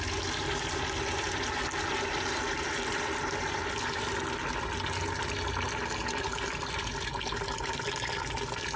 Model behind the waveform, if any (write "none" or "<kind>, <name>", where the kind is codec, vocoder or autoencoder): none